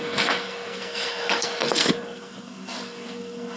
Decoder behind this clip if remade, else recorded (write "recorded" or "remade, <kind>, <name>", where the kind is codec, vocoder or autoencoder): remade, codec, SNAC